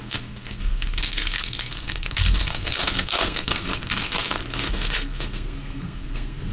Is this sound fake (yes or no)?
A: yes